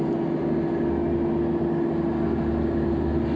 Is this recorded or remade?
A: recorded